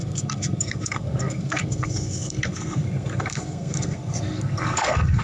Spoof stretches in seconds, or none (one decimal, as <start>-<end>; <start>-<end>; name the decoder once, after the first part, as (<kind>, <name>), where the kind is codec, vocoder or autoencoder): 0.0-5.2 (codec, SNAC)